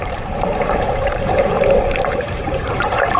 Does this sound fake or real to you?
fake